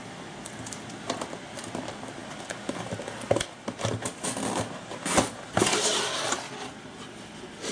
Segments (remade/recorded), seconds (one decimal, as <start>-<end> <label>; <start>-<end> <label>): 0.0-7.7 recorded